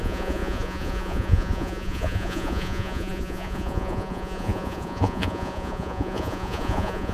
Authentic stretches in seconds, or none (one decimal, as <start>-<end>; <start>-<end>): none

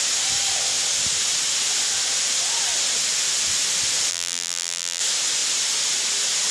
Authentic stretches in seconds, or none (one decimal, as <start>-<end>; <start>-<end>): 0.0-4.1; 5.0-6.5

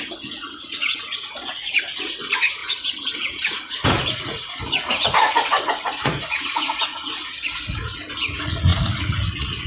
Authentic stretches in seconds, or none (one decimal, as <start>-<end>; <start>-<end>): none

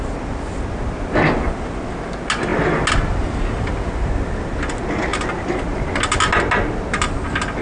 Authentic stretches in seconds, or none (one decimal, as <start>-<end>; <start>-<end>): 0.0-7.6

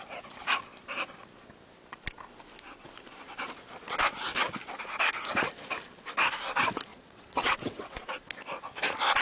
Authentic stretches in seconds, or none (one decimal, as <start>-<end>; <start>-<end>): 0.0-6.9; 8.1-9.2

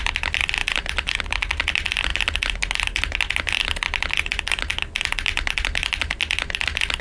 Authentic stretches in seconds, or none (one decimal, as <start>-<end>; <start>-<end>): 0.0-7.0

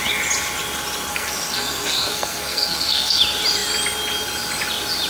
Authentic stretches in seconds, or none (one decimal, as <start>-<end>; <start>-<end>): 0.0-1.1; 3.2-5.1